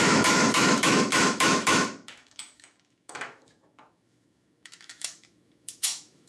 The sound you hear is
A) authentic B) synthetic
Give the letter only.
B